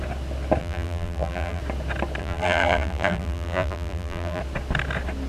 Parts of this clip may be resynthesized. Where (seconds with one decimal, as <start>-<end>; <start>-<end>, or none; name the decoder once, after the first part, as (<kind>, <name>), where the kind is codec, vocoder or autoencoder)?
0.6-1.6 (vocoder, BigVGAN v2); 2.2-4.4